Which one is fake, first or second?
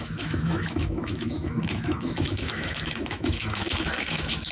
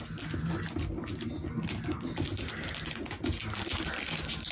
first